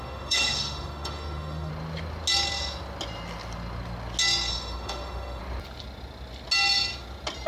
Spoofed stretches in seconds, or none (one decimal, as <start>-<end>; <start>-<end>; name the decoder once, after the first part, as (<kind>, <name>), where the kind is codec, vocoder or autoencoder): 0.0-1.7 (autoencoder, DAC-VAE); 4.5-5.4

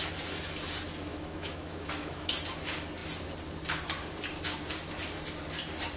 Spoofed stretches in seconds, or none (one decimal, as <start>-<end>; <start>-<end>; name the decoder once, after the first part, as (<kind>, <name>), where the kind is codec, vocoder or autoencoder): 1.1-2.3 (autoencoder, DAC-VAE)

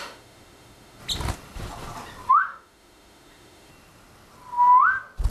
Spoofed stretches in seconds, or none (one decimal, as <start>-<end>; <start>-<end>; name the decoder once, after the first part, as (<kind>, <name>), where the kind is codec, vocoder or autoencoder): 0.0-1.0 (autoencoder, DAC-VAE); 2.3-3.7

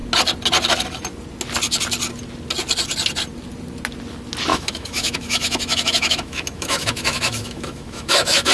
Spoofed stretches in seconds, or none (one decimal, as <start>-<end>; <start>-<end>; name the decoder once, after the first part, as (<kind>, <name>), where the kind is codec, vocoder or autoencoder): 4.5-8.5 (autoencoder, DAC-VAE)

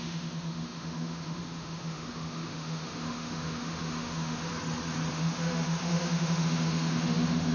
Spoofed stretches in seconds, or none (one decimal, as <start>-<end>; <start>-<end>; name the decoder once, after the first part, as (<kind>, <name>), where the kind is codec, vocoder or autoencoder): 0.0-4.5 (autoencoder, DAC-VAE); 5.1-7.5

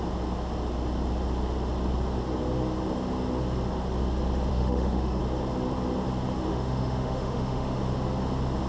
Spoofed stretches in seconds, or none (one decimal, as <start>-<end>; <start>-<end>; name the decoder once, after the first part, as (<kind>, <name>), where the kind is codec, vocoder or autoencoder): 4.5-5.2 (autoencoder, DAC-VAE); 6.5-7.8